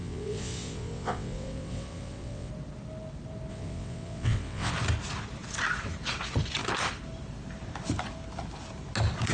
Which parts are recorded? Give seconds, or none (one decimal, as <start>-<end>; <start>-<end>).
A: 2.5-3.5; 4.7-9.3